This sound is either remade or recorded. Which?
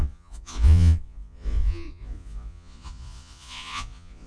remade